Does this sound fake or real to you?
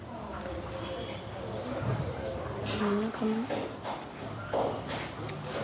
real